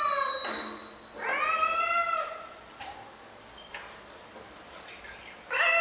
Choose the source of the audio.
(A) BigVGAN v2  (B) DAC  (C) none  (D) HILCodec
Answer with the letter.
C